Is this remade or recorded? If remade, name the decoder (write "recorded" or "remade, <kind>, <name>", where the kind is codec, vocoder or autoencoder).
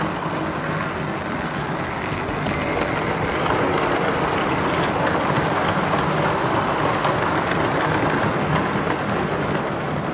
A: recorded